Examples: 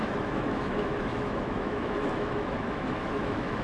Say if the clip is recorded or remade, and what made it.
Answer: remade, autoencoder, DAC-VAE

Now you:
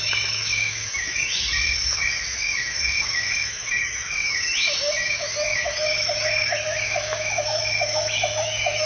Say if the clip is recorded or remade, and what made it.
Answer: remade, autoencoder, DAC-VAE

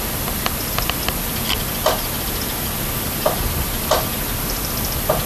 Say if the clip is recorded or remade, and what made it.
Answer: recorded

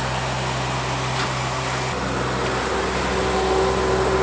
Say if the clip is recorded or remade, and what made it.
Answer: recorded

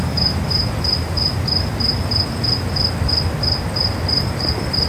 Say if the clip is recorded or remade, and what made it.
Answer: recorded